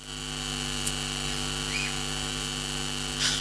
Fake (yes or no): no